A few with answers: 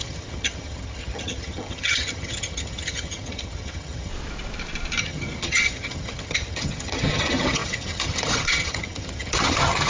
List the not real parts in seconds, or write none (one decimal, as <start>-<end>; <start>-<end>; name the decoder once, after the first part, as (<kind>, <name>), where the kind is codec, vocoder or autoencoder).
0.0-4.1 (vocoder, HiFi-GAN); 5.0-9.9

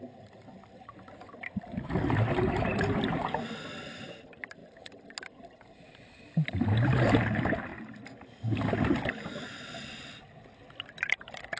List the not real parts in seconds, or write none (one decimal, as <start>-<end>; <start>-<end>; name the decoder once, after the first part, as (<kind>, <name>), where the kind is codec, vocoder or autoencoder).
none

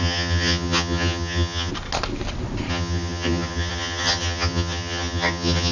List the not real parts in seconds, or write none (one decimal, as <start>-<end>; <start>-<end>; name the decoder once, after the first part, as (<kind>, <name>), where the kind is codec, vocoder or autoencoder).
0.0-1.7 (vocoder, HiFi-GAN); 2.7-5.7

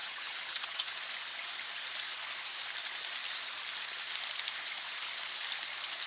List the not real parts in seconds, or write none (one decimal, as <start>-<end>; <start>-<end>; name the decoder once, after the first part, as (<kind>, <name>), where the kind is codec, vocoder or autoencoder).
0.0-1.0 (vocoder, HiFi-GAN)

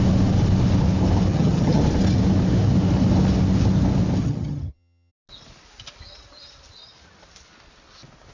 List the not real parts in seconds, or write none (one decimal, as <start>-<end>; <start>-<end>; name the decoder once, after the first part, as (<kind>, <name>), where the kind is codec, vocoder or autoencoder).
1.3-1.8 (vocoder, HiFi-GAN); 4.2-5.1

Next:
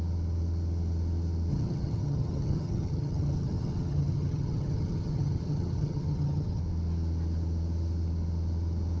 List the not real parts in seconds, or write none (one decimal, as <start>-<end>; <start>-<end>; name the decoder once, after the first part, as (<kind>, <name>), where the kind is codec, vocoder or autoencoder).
1.5-6.6 (vocoder, HiFi-GAN)